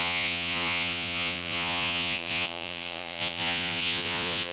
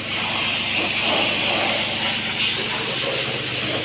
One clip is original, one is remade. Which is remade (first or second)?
first